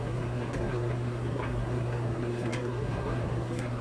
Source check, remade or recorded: remade